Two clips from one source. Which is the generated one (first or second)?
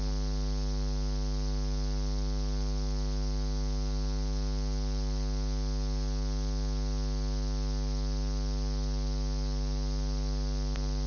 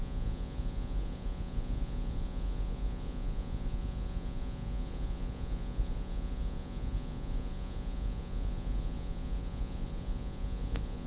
second